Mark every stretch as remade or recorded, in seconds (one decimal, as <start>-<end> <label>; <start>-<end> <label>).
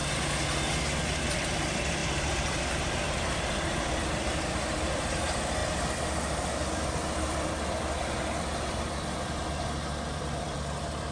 0.0-0.7 recorded; 0.7-11.1 remade